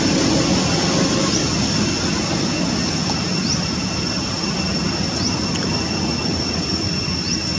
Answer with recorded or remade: recorded